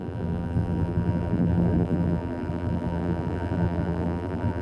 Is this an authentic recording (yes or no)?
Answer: no